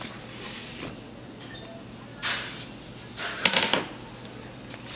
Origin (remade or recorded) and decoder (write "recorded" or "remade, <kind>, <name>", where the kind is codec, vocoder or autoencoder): recorded